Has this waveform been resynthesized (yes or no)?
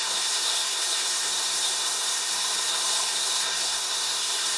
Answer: yes